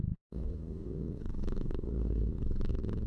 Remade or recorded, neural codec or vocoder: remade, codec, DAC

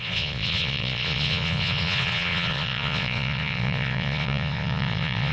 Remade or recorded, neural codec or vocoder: remade, vocoder, Vocos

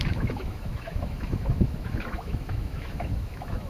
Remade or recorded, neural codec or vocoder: remade, autoencoder, DAC-VAE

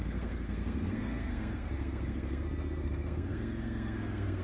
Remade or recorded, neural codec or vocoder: remade, codec, SNAC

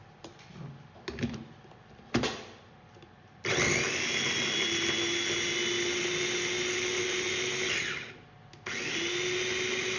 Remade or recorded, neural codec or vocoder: recorded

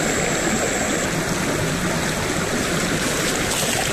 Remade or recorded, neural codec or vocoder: recorded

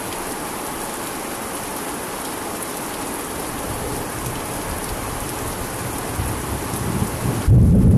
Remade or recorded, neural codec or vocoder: recorded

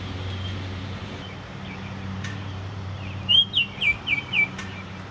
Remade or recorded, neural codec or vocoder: remade, vocoder, BigVGAN v2